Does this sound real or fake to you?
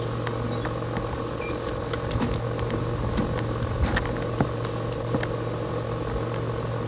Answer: real